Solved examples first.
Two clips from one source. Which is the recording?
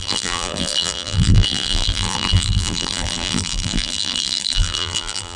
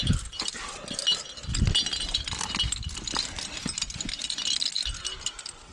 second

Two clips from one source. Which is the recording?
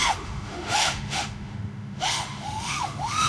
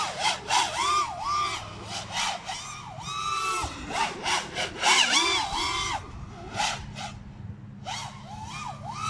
second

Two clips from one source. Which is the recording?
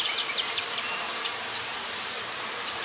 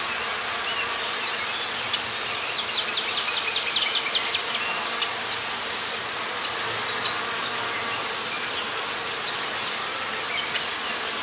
second